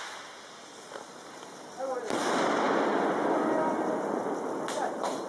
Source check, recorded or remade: recorded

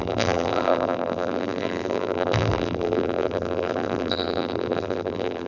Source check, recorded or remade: remade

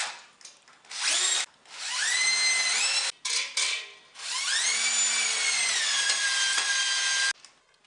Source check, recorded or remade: recorded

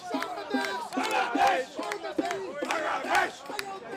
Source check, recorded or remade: recorded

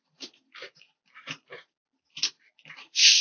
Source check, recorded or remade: recorded